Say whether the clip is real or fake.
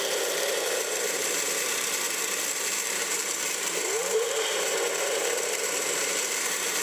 fake